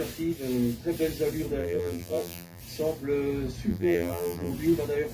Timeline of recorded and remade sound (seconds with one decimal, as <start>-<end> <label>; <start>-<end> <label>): 0.0-1.6 recorded; 1.6-2.6 remade; 2.6-3.7 recorded; 3.7-4.5 remade; 4.5-5.1 recorded